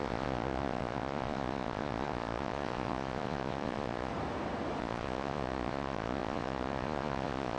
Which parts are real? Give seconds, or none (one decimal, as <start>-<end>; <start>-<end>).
4.1-4.8